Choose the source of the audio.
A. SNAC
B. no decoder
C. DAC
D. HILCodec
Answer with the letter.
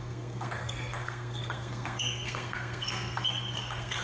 A